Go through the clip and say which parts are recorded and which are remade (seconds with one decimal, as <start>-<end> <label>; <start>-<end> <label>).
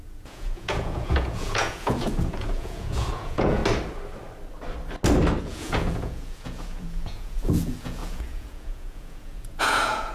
0.0-3.6 remade; 3.6-5.4 recorded; 5.4-10.1 remade